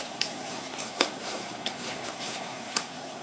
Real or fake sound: fake